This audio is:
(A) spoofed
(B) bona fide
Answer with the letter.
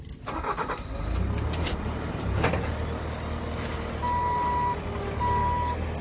B